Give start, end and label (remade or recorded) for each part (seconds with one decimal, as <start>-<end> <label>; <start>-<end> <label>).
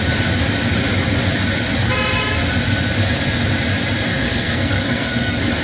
0.0-4.1 recorded; 4.1-5.6 remade